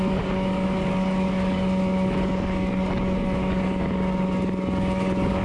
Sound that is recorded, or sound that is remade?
remade